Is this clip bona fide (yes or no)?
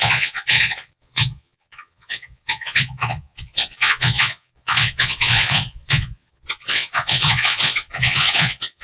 no